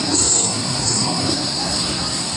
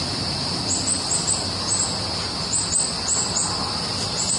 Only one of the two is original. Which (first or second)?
second